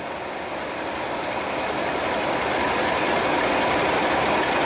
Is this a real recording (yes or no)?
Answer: yes